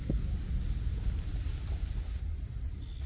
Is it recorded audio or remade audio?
recorded